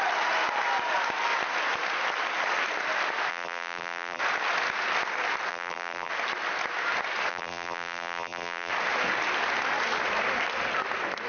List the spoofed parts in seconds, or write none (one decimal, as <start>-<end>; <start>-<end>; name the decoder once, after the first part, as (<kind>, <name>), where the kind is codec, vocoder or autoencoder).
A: 3.3-4.2 (vocoder, BigVGAN v2); 5.5-6.1; 7.3-8.7